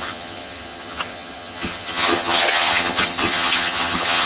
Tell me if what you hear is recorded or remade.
remade